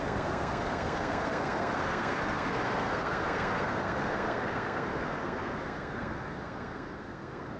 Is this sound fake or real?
fake